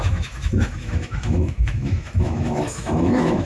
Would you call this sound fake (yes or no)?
yes